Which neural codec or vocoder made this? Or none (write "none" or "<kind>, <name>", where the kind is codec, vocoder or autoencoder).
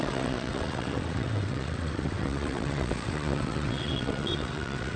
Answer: vocoder, WaveNeXt